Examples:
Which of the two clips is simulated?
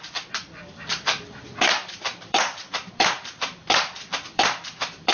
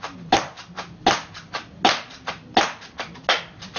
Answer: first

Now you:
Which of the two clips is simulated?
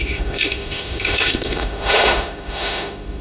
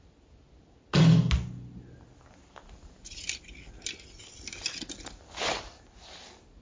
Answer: first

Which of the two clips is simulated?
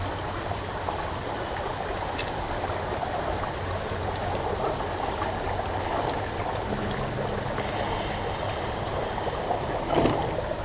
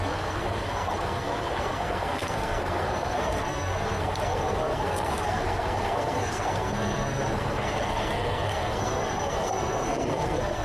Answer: second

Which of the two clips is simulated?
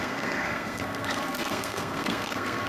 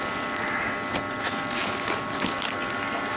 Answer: first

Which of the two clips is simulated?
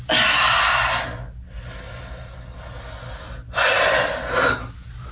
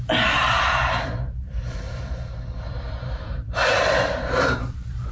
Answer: second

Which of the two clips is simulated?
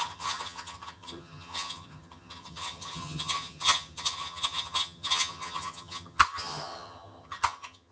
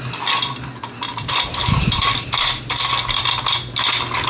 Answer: first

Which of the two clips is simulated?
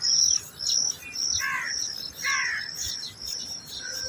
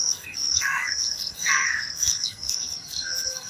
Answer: second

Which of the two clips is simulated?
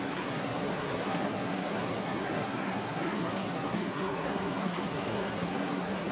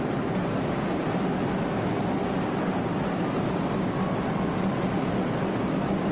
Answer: first